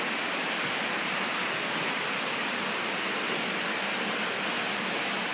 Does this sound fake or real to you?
real